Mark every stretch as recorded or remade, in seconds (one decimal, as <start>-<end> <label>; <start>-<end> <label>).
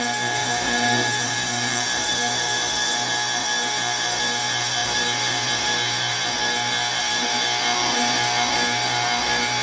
0.0-9.6 remade